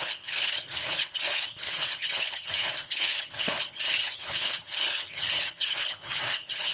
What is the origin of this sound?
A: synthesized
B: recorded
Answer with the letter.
A